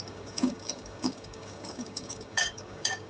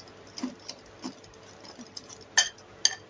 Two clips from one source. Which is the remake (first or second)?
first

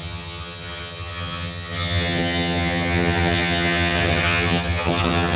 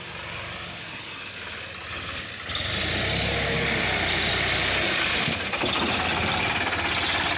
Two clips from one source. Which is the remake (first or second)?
first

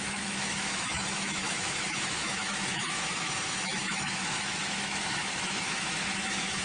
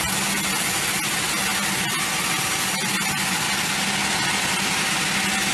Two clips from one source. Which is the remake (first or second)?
first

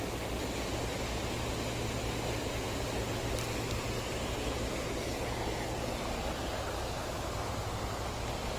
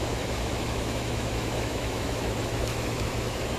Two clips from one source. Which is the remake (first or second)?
second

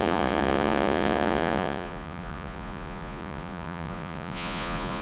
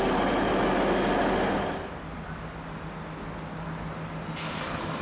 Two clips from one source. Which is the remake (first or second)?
first